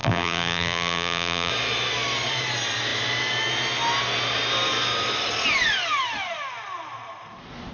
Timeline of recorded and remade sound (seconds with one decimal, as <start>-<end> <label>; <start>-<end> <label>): 0.0-1.5 remade; 1.5-7.7 recorded